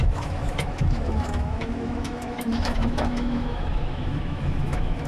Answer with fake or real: fake